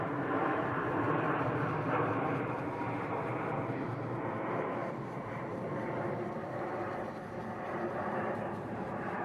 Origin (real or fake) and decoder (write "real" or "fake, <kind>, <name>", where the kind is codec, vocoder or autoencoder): fake, vocoder, BigVGAN v2